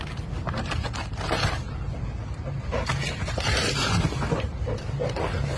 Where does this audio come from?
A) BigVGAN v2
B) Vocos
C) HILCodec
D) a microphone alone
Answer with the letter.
A